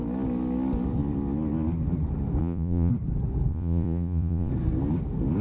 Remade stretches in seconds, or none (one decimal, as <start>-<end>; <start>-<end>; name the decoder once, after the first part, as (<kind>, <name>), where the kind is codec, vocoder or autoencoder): 2.4-2.9 (vocoder, Vocos); 3.5-4.5